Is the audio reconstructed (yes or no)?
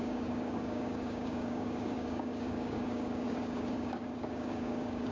yes